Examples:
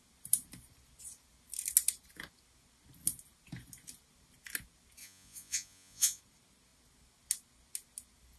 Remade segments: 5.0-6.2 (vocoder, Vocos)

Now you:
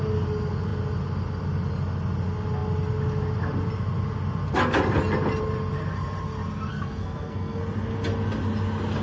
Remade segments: 6.7-7.6 (codec, SNAC)

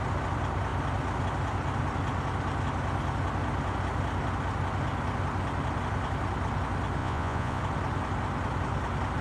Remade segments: 7.0-7.6 (vocoder, Vocos)